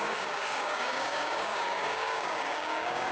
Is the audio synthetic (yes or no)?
yes